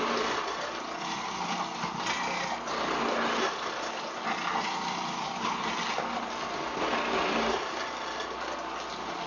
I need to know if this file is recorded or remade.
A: recorded